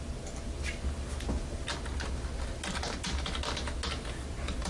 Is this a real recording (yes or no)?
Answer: yes